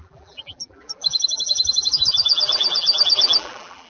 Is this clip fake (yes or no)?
yes